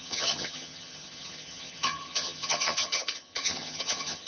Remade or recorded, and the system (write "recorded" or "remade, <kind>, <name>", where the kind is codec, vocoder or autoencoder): remade, vocoder, HiFi-GAN